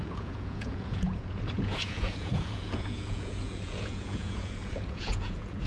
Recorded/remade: remade